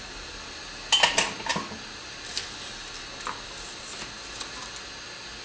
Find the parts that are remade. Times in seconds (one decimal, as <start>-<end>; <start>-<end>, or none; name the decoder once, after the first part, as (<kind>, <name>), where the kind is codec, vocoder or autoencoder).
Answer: none